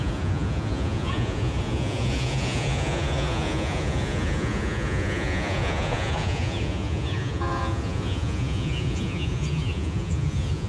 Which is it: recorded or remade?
remade